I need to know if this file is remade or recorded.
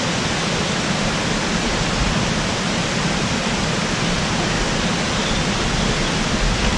recorded